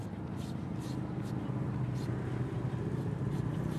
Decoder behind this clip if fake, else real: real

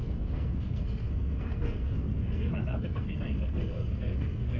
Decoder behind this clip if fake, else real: fake, codec, SNAC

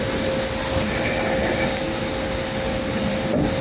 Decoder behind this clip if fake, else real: real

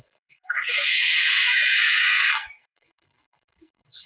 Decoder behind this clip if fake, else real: fake, codec, SNAC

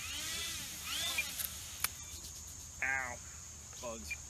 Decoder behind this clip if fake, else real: real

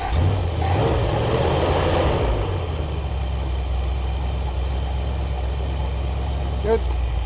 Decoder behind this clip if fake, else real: real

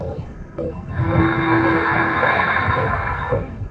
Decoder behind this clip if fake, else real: fake, codec, SNAC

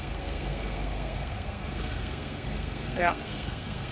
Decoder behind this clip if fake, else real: fake, codec, SNAC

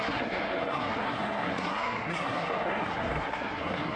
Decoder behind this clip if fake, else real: fake, codec, SNAC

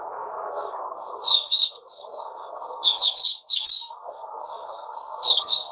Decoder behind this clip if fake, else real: fake, codec, SNAC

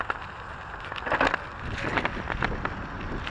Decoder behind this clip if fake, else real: real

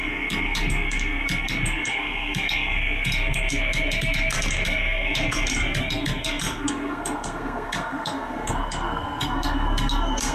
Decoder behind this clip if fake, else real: fake, codec, SNAC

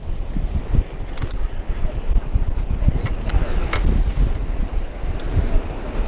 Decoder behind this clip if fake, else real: real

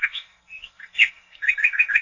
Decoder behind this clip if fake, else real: fake, codec, SNAC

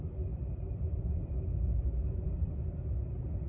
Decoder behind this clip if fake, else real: real